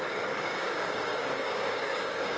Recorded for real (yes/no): no